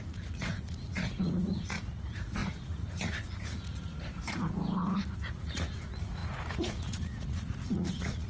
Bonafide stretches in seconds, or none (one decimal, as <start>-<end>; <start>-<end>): 3.9-5.3